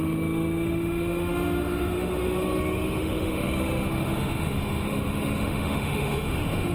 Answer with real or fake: fake